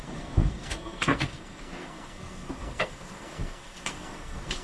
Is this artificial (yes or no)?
yes